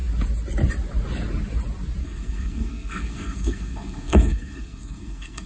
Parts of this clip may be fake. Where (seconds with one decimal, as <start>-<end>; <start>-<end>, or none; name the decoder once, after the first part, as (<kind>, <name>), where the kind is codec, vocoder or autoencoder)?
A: 2.0-5.5 (codec, SNAC)